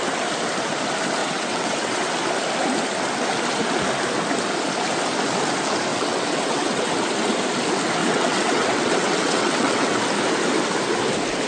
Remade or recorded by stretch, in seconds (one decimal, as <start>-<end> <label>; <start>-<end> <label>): 0.0-1.2 recorded; 1.2-2.1 remade; 2.1-5.9 recorded; 5.9-6.9 remade; 6.9-8.0 recorded; 8.0-10.0 remade; 10.0-11.5 recorded